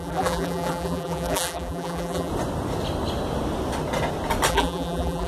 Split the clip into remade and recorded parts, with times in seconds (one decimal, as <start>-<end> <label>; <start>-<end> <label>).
0.0-2.3 remade; 2.3-4.5 recorded; 4.5-5.3 remade